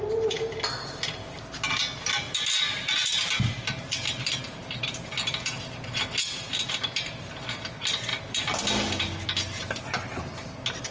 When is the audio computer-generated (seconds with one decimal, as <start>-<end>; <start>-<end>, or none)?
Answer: none